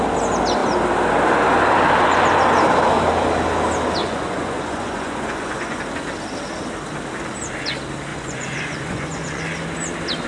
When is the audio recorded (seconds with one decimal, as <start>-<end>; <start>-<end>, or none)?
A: 0.0-4.0; 5.8-8.1; 9.4-10.3